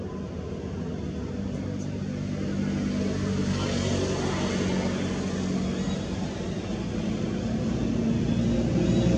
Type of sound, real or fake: real